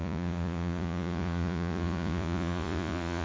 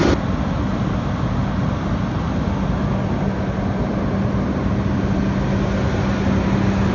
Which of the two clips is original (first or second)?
second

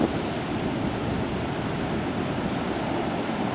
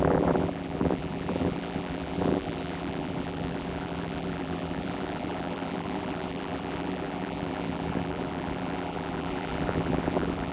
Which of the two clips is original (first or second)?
first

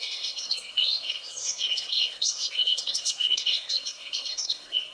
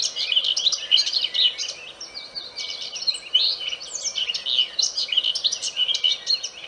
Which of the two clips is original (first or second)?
second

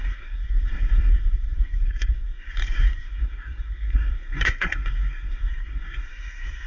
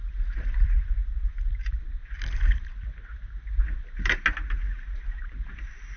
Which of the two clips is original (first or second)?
second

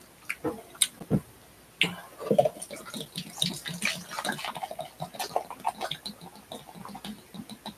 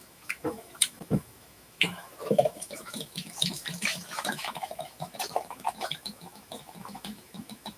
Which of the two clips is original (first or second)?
first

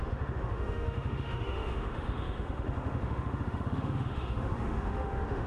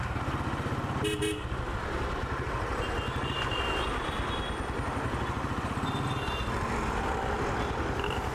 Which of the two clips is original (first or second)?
second